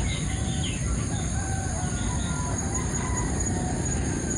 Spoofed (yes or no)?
no